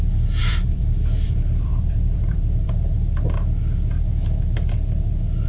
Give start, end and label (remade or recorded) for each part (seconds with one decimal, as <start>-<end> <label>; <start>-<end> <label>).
0.0-0.4 recorded; 0.4-2.7 remade; 2.7-5.5 recorded

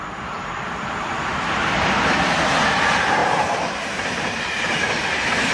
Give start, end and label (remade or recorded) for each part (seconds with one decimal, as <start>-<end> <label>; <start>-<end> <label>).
0.0-5.5 remade

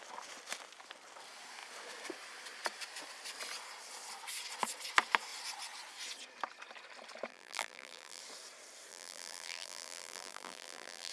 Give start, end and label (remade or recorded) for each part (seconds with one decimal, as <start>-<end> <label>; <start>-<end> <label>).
0.0-7.3 recorded; 7.3-8.2 remade; 8.2-8.9 recorded; 8.9-11.1 remade

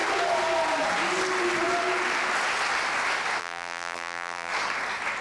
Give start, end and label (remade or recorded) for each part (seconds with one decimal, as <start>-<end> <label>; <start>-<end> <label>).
0.0-3.4 recorded; 3.4-4.5 remade; 4.5-5.2 recorded

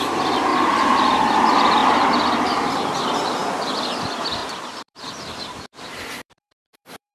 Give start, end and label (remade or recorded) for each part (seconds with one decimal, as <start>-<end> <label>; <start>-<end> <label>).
0.0-0.5 recorded; 0.5-1.2 remade; 1.2-4.4 recorded; 4.4-7.1 remade